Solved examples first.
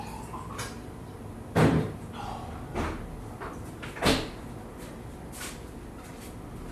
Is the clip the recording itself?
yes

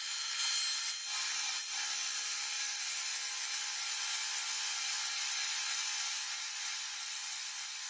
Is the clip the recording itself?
yes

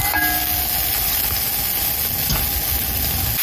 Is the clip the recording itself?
yes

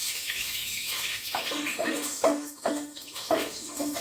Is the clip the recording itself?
no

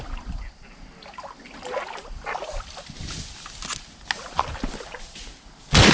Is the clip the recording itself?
yes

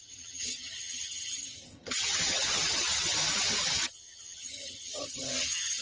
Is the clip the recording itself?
no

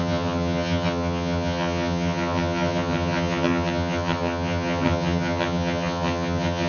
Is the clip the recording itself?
no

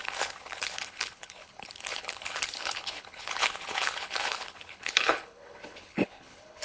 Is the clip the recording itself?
no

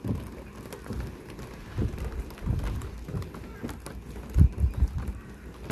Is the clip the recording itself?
yes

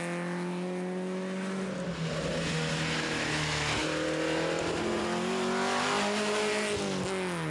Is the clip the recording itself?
yes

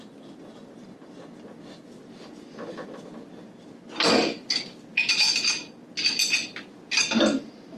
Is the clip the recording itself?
yes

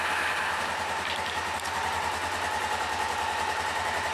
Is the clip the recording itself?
no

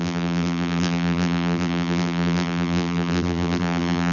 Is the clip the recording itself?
no